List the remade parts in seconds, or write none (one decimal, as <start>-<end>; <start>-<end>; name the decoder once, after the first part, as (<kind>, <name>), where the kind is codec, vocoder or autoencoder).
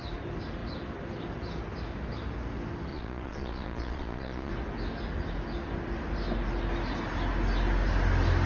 2.9-4.5 (vocoder, Vocos)